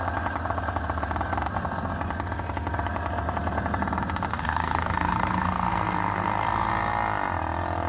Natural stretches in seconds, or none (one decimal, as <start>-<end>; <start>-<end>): 0.0-4.3; 6.7-7.9